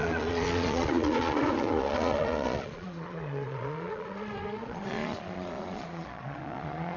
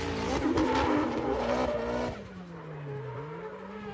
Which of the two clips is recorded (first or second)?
second